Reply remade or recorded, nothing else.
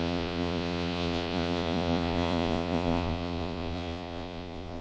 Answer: remade